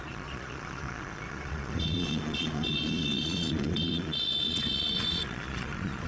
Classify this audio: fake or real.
fake